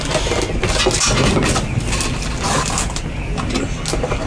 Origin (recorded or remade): recorded